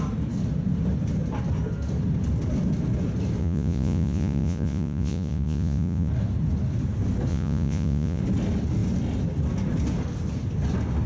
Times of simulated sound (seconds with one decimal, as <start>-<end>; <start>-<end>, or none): 3.4-6.1; 7.3-8.2